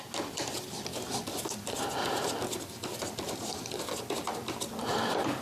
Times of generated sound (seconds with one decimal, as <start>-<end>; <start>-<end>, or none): none